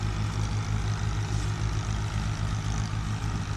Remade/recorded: recorded